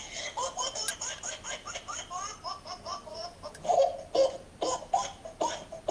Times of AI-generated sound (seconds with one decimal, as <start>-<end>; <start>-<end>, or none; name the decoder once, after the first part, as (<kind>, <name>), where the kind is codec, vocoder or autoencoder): 3.1-3.8 (vocoder, BigVGAN v2)